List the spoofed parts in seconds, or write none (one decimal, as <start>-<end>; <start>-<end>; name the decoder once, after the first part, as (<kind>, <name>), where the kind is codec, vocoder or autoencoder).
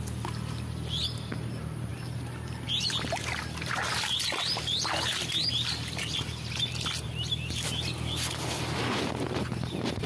none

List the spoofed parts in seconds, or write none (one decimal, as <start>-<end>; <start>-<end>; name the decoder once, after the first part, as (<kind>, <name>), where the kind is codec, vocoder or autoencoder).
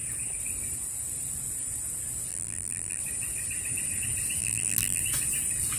2.3-3.0 (vocoder, BigVGAN v2); 4.4-5.0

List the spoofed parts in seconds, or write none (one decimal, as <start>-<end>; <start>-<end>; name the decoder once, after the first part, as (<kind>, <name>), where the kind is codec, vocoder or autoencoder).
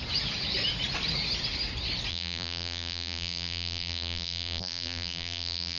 2.1-5.8 (vocoder, BigVGAN v2)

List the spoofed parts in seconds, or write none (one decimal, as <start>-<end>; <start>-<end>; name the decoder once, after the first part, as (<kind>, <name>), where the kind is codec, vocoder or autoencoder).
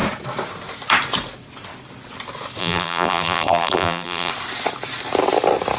2.6-4.3 (vocoder, BigVGAN v2)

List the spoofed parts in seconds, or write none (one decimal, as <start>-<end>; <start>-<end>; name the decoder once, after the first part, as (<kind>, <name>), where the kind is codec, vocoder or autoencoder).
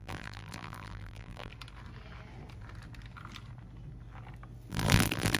0.0-1.5 (vocoder, BigVGAN v2); 4.7-5.4